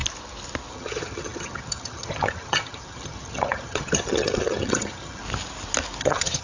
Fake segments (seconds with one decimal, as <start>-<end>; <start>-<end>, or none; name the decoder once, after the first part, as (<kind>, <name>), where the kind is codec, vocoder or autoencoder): 0.7-5.2 (vocoder, HiFi-GAN); 6.0-6.4